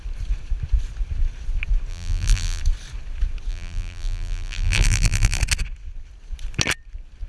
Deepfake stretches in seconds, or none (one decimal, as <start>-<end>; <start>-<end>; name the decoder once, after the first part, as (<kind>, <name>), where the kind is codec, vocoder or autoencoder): 1.9-2.6 (vocoder, BigVGAN v2); 3.5-5.4